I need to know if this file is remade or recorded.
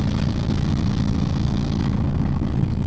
remade